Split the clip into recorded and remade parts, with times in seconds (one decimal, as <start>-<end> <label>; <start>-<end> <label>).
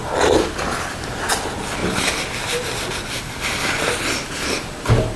0.0-5.2 recorded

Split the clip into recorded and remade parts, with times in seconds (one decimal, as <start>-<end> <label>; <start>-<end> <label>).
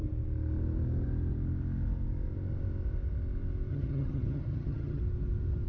0.0-3.7 recorded; 3.7-5.0 remade; 5.0-5.7 recorded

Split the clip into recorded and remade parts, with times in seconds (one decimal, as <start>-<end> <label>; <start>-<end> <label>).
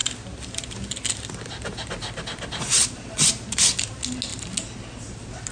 0.0-5.5 recorded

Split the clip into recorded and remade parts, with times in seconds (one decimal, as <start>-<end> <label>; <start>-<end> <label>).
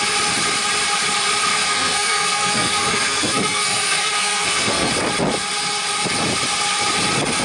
0.0-1.5 recorded; 1.5-4.9 remade; 4.9-7.4 recorded